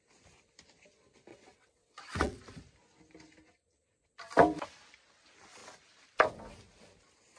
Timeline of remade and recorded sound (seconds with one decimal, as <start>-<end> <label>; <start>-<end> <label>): 0.0-1.3 recorded; 1.3-2.4 remade; 2.4-7.4 recorded